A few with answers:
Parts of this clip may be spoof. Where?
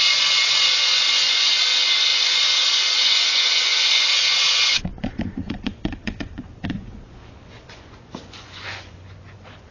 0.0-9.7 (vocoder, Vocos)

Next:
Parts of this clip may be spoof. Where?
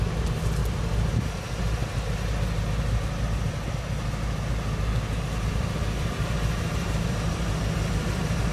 0.0-0.6 (vocoder, BigVGAN v2); 5.5-8.5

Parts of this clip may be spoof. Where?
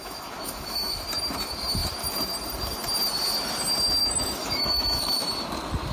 0.0-0.9 (autoencoder, DAC-VAE); 4.0-5.3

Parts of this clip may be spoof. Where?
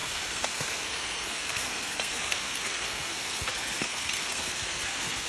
0.0-5.3 (codec, SNAC)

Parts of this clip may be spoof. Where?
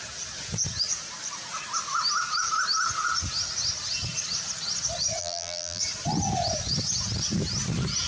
5.2-5.8 (vocoder, BigVGAN v2)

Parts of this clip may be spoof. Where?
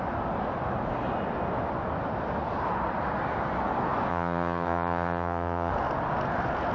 4.1-5.7 (vocoder, HiFi-GAN)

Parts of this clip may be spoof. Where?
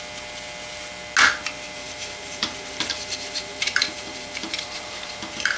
1.8-5.6 (vocoder, BigVGAN v2)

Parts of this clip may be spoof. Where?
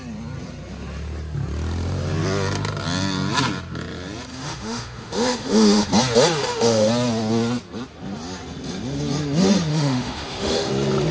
4.3-5.9 (autoencoder, DAC-VAE); 6.4-6.9; 9.7-10.7